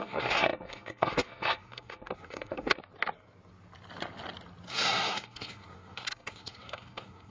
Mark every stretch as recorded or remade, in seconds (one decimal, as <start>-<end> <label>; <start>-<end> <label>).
0.0-2.8 remade; 2.8-4.7 recorded; 4.7-7.3 remade